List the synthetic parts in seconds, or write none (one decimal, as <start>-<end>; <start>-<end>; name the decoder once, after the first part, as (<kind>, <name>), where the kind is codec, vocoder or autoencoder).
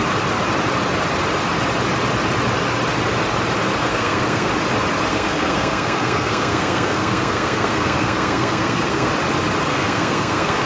3.8-4.5 (codec, SNAC); 5.1-9.1; 9.7-10.7